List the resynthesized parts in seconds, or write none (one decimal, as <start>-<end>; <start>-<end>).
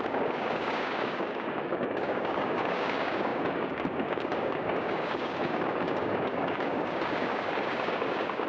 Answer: 0.0-8.5